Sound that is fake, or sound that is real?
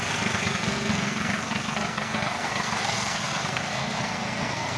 fake